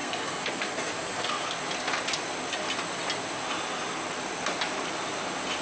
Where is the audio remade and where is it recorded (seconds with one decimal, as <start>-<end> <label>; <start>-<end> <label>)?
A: 0.0-1.6 remade; 1.6-5.6 recorded